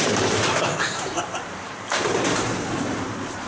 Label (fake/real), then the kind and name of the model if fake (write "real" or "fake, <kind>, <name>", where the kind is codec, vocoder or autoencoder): fake, vocoder, BigVGAN v2